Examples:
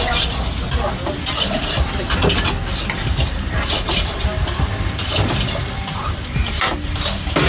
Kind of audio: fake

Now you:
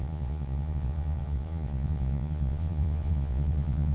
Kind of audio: fake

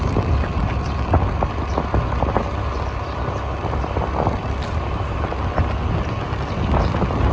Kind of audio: real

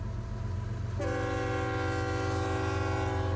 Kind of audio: real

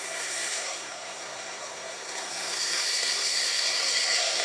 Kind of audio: fake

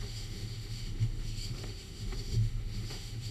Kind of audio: fake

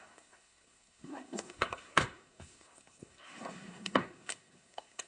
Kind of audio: fake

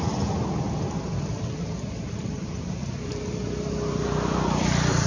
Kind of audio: fake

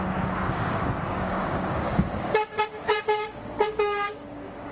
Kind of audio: fake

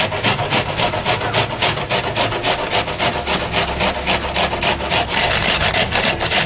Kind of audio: real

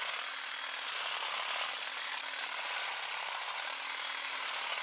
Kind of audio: real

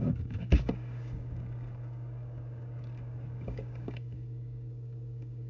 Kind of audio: fake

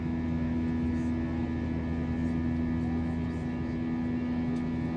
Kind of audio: real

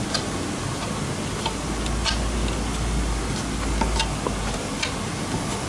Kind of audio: real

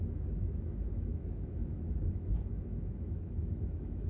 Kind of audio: fake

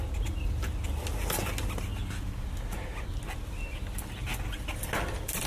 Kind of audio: real